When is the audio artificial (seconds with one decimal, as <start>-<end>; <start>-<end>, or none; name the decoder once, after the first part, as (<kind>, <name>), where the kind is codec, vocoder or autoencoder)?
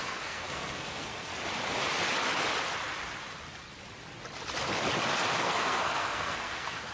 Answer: 0.0-1.3 (codec, SNAC); 5.4-6.9